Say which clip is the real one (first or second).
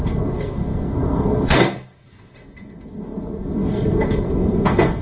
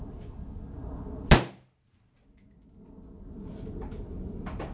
second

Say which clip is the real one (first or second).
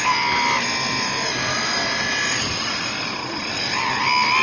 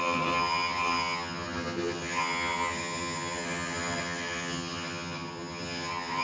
first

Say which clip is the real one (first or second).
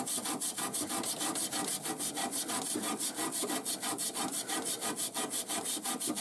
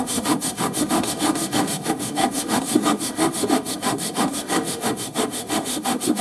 first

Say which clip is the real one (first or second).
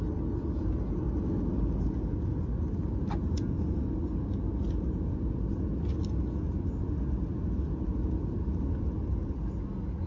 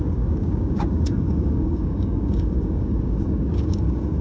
first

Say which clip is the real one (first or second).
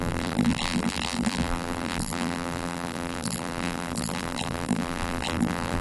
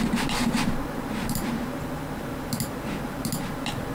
second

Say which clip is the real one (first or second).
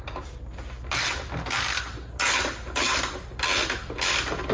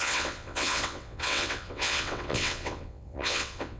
first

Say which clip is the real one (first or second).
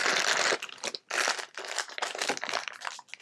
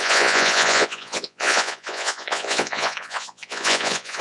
first